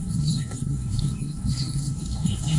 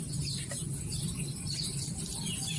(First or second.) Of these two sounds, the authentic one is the second